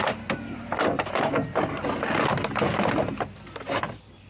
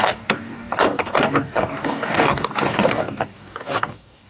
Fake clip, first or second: second